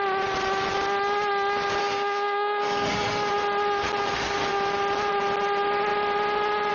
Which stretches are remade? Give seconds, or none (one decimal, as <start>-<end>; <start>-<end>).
1.8-3.3